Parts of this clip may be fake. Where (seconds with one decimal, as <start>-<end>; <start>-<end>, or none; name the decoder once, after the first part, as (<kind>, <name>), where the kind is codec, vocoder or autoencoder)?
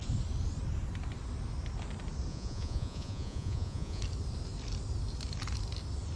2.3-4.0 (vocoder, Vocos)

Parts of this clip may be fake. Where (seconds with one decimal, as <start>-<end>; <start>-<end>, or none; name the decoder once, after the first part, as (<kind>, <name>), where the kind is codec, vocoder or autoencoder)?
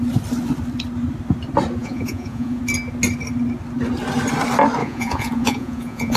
1.8-2.6 (vocoder, Vocos); 4.8-6.2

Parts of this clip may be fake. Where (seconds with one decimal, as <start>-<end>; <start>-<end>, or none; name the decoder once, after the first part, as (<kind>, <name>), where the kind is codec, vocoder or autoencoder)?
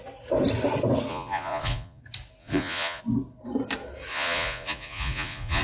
1.1-2.0 (vocoder, Vocos); 2.4-3.0; 4.1-5.6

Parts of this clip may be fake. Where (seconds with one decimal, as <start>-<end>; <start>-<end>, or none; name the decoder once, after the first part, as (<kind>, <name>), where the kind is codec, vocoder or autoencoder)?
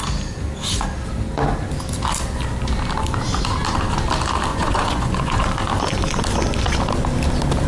4.5-5.5 (vocoder, Vocos)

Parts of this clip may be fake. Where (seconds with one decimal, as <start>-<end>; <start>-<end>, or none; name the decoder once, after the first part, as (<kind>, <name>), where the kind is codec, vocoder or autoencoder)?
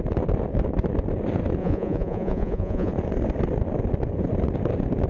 1.6-2.9 (vocoder, Vocos)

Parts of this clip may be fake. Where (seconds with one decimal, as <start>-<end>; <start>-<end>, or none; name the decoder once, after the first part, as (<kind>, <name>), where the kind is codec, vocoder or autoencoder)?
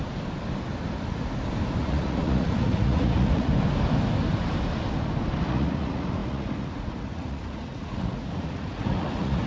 1.8-3.5 (vocoder, Vocos); 5.5-9.5